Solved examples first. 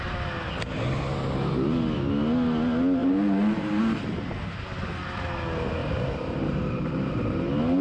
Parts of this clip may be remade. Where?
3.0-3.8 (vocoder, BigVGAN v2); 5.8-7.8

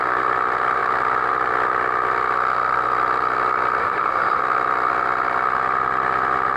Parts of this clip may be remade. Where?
3.8-4.4 (autoencoder, DAC-VAE)

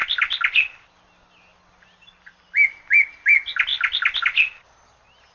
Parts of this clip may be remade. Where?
none

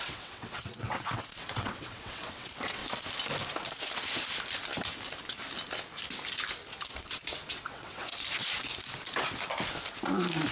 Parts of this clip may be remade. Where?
0.0-2.8 (vocoder, WaveNeXt); 7.5-8.1

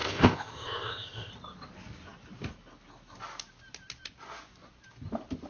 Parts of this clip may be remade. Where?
0.0-1.3 (codec, ZipCodec)